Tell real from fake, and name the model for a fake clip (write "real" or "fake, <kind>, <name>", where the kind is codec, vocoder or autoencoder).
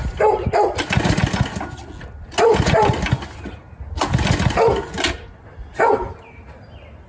real